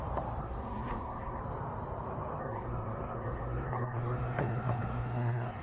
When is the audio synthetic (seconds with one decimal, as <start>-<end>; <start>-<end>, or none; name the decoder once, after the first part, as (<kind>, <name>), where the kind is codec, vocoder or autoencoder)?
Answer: 0.4-1.4 (codec, SNAC); 2.4-5.6